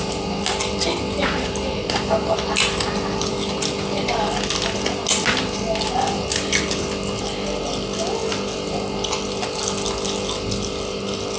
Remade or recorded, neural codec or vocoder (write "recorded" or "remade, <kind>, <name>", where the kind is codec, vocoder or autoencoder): recorded